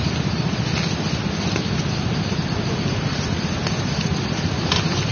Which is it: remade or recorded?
recorded